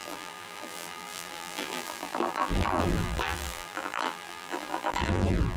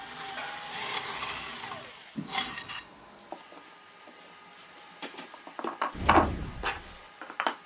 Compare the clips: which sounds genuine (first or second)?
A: second